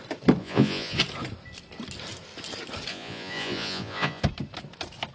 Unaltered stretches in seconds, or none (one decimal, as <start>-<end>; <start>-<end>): 0.0-0.4; 1.0-2.9; 4.2-5.1